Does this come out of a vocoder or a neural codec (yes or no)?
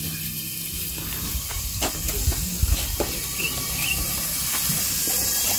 no